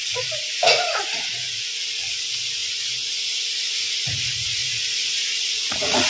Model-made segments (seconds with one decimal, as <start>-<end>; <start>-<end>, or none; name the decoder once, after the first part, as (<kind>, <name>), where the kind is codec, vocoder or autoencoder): 0.0-6.1 (vocoder, Vocos)